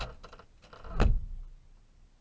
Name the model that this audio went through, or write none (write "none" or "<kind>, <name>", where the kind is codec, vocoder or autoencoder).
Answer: none